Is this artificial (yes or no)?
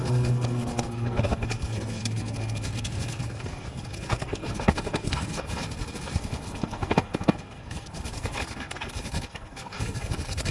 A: yes